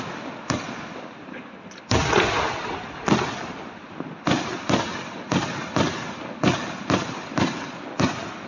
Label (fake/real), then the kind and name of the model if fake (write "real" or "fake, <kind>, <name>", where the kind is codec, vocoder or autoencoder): real